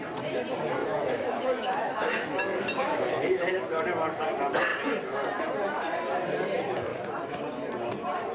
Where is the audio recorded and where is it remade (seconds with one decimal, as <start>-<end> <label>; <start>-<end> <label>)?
0.0-0.8 recorded; 0.8-3.5 remade; 3.5-6.9 recorded; 6.9-7.4 remade; 7.4-8.3 recorded